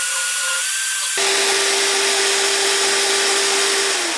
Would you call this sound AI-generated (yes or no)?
no